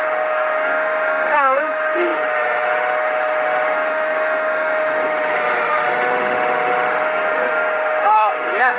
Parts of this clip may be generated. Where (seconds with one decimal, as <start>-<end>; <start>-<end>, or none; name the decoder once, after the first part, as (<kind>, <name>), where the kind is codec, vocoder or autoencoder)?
0.0-8.8 (autoencoder, DAC-VAE)